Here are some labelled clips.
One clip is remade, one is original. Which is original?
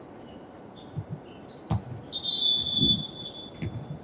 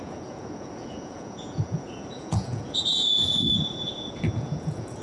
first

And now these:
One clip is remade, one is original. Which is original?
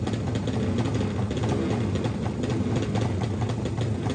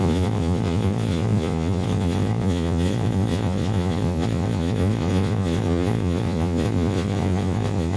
first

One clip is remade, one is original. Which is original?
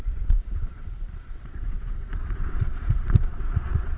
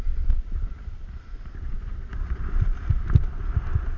second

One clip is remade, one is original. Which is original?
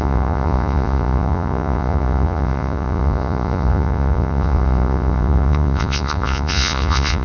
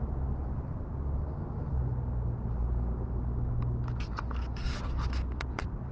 second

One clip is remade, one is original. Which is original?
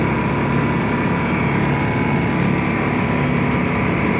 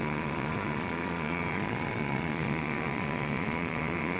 first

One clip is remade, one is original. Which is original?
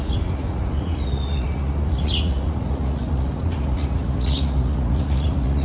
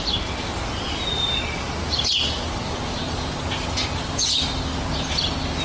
second